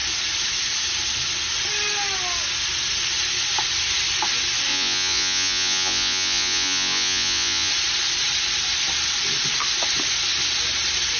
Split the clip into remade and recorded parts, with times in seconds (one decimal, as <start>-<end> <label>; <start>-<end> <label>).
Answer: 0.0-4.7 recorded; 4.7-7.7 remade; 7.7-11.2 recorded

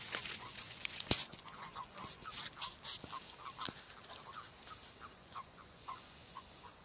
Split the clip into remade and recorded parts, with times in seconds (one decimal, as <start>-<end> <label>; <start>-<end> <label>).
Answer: 0.0-2.3 remade; 2.3-5.1 recorded; 5.1-6.8 remade

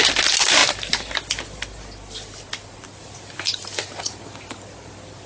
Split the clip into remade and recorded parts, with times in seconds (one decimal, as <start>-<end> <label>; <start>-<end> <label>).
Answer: 0.0-5.3 recorded